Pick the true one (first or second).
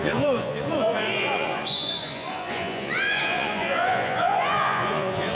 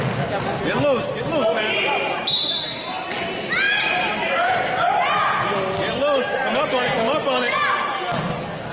second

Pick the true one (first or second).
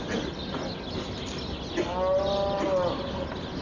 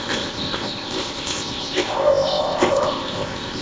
first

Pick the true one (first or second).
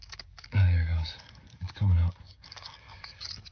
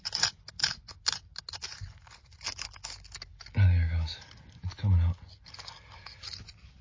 second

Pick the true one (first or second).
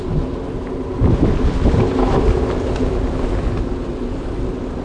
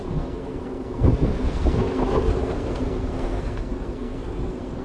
first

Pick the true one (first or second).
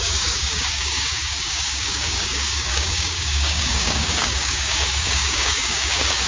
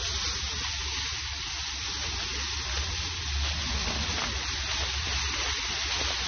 second